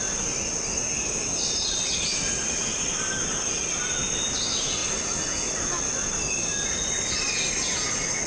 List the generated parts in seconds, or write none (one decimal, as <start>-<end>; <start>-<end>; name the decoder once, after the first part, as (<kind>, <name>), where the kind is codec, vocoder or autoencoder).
none